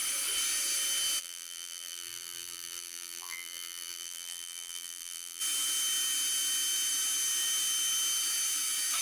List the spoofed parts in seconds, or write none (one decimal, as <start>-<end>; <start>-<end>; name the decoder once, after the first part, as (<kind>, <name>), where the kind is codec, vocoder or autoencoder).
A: 1.2-5.4 (vocoder, BigVGAN v2)